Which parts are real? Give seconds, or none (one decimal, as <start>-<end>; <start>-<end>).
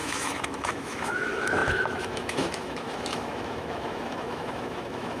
none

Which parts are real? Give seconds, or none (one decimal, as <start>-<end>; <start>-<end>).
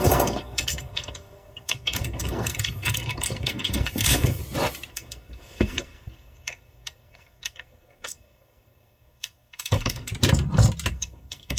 4.4-4.9; 10.1-10.9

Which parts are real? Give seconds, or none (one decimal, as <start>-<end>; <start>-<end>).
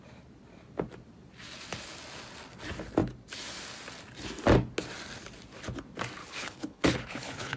0.0-6.2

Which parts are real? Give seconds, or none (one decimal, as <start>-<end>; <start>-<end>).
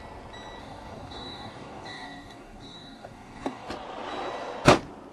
0.0-0.6; 3.7-5.1